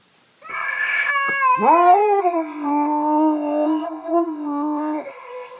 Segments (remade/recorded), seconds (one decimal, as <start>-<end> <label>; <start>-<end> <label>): 0.0-0.5 recorded; 0.5-1.1 remade; 1.1-2.2 recorded; 2.2-5.6 remade